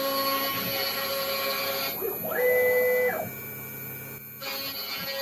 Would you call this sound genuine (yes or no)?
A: yes